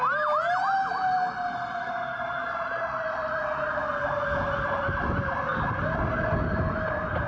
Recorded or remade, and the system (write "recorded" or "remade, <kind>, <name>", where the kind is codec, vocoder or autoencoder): recorded